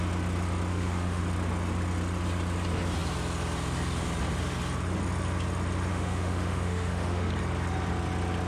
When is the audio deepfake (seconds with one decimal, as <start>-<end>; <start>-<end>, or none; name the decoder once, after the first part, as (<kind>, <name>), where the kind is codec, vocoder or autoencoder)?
0.7-1.2 (autoencoder, DAC-VAE); 5.9-7.3